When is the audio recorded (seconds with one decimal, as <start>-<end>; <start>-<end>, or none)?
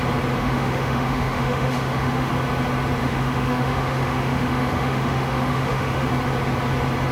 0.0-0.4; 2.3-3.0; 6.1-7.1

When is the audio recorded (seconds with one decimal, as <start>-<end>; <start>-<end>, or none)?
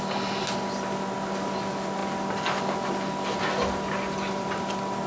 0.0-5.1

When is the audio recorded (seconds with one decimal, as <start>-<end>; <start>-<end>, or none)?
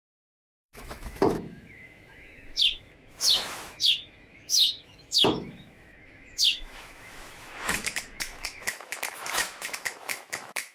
none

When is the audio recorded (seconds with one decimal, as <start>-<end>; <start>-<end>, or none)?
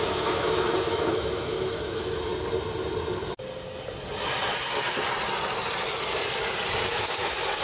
2.3-6.9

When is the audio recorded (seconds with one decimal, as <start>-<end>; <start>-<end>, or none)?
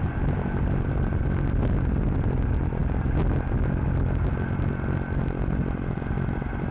0.0-6.7